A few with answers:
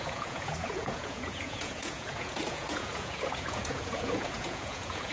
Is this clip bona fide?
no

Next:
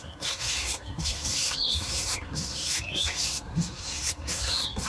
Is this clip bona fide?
no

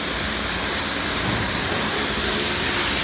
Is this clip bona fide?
yes